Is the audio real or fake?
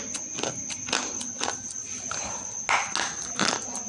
real